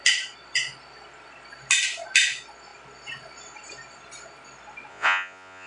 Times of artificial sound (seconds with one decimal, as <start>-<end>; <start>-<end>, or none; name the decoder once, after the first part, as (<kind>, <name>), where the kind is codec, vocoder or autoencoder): 4.9-5.7 (vocoder, Vocos)